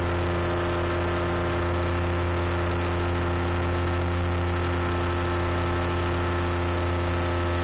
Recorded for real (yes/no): yes